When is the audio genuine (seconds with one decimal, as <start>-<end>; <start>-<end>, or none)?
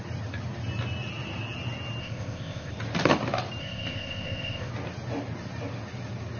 0.0-2.0; 2.7-3.6; 4.7-6.4